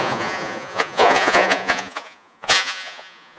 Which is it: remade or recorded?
remade